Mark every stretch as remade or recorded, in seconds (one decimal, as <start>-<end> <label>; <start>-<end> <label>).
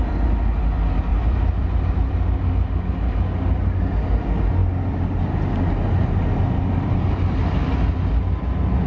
0.0-1.1 recorded; 1.1-2.4 remade; 2.4-8.9 recorded